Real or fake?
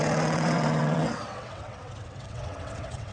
fake